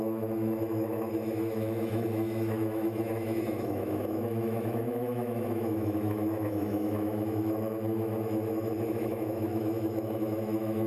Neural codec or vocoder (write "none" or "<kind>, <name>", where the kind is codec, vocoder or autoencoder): autoencoder, DAC-VAE